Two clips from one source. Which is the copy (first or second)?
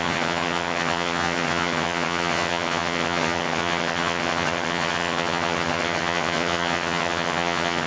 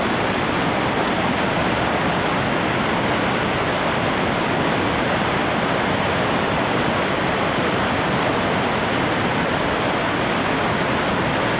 first